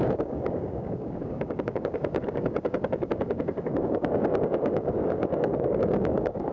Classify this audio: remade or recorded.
remade